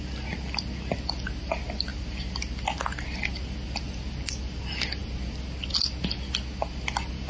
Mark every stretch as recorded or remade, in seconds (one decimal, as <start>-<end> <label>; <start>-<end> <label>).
0.0-7.3 recorded